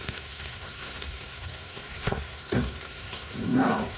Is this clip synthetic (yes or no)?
yes